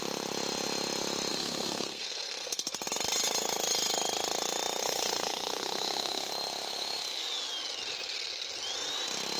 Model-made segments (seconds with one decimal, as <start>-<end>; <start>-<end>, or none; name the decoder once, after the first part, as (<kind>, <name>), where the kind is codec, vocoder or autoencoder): 1.3-2.7 (codec, SNAC); 4.8-6.3